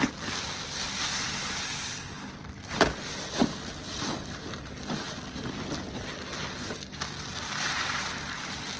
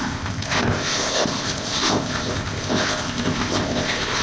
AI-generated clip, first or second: second